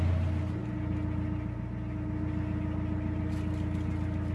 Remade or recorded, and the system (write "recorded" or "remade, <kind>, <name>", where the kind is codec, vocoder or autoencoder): recorded